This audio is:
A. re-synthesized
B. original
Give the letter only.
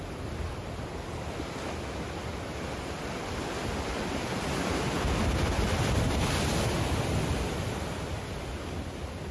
B